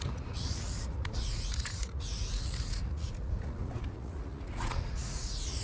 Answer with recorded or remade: remade